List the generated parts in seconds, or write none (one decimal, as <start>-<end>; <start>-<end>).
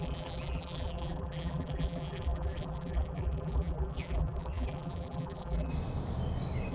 0.0-5.7